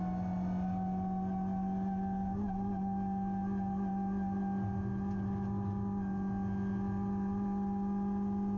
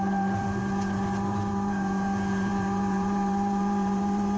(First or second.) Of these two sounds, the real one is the first